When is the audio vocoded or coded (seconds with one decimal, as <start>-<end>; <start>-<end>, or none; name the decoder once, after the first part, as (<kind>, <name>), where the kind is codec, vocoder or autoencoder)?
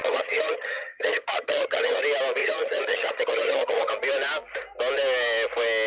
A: 0.0-2.0 (vocoder, HiFi-GAN); 2.4-3.9